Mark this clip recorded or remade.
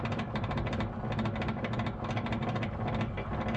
recorded